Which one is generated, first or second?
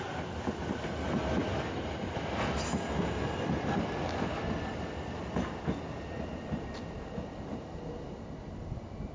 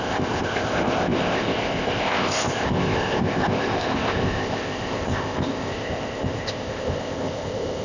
second